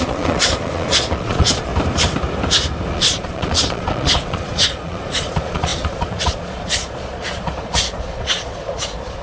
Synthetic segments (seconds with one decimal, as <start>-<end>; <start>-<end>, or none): 0.0-1.7; 2.9-9.2